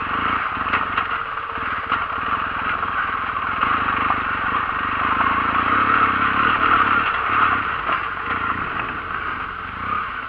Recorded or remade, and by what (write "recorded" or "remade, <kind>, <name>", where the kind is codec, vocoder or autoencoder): recorded